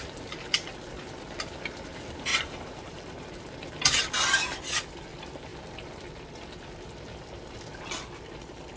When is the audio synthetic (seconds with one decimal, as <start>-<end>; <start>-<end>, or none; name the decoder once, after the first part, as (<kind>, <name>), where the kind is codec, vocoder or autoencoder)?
2.3-3.1 (vocoder, BigVGAN v2)